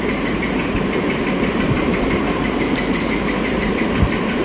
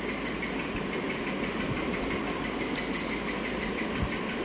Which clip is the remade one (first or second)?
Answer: first